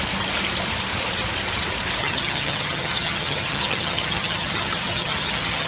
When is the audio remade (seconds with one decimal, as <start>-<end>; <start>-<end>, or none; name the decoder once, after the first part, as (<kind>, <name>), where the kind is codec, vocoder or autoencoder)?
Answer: 2.0-5.7 (vocoder, HiFi-GAN)